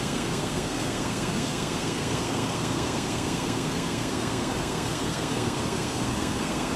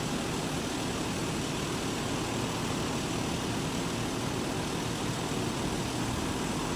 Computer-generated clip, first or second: first